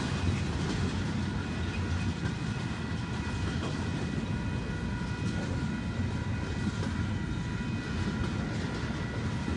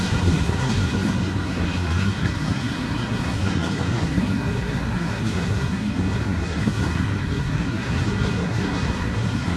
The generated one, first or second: second